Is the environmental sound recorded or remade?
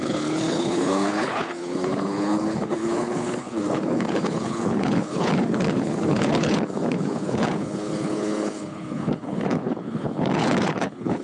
remade